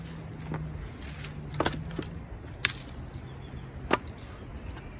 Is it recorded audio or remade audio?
recorded